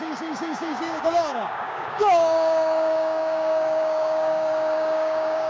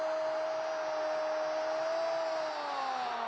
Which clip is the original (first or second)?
second